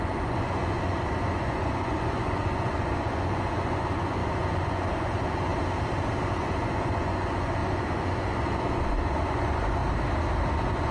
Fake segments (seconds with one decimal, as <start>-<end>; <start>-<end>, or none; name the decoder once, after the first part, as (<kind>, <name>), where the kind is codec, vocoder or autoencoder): 0.0-5.5 (vocoder, Vocos); 6.2-9.8; 10.5-10.9